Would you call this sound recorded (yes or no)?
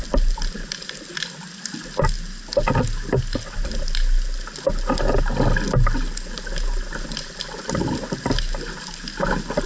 yes